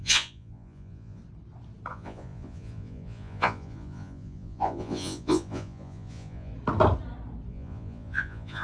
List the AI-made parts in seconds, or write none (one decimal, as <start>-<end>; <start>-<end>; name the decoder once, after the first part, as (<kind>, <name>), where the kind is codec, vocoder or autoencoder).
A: 0.0-1.2 (vocoder, Vocos); 1.9-6.5; 7.5-8.6